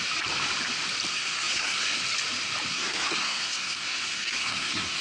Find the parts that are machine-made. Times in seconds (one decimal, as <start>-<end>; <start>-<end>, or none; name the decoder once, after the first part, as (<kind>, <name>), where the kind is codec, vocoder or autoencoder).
1.1-2.0 (codec, SNAC); 2.7-5.0